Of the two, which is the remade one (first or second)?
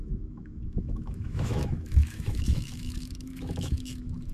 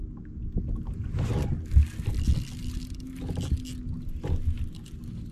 first